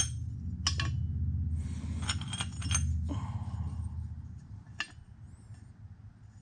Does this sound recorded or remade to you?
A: recorded